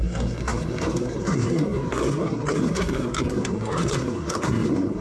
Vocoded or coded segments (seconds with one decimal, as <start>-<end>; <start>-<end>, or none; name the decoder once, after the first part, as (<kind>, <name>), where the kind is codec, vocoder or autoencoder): 0.0-5.0 (codec, SNAC)